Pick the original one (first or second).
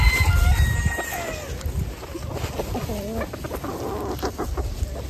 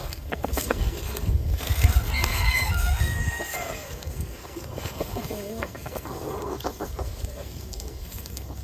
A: first